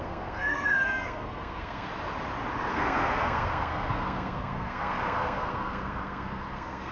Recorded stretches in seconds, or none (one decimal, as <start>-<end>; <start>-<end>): 1.9-2.7